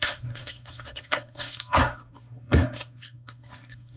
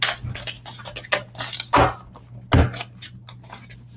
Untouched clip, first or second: second